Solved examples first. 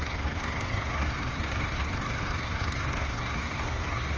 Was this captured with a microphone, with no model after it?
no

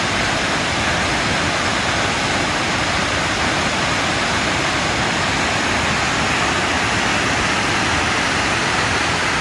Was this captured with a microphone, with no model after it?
yes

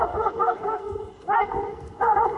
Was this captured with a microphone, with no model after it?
no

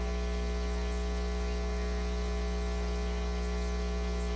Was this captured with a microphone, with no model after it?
yes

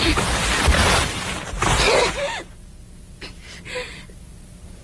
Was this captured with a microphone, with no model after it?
yes